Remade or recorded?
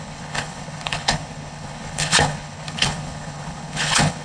remade